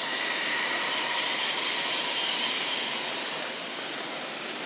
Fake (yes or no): no